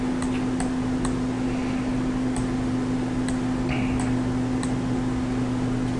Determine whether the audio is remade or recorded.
recorded